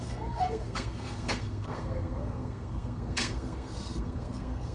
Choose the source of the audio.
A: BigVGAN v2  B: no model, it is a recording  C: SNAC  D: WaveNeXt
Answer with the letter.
C